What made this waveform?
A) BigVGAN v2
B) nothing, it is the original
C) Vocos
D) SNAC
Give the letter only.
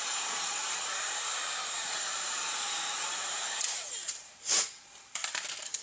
A